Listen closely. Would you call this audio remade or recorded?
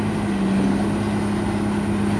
recorded